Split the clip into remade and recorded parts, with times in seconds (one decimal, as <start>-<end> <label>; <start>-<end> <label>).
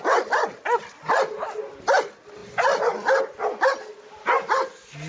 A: 0.0-5.1 recorded